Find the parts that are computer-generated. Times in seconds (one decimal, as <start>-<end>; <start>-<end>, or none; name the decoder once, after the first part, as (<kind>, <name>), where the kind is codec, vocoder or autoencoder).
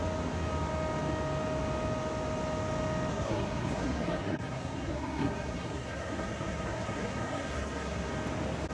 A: 3.1-8.1 (codec, SNAC)